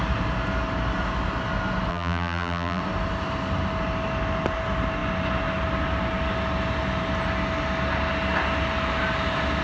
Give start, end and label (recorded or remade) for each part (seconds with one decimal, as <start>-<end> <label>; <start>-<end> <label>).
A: 0.0-1.9 recorded; 1.9-2.8 remade; 2.8-9.6 recorded